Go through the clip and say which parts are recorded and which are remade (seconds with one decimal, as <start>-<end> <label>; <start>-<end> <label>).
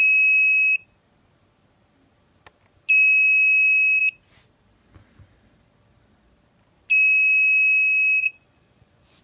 0.0-8.2 recorded; 8.2-9.2 remade